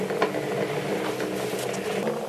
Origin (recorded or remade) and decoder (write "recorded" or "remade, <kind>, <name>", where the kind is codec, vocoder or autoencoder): recorded